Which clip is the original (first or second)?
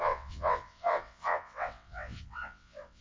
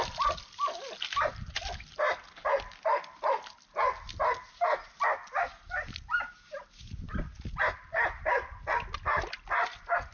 second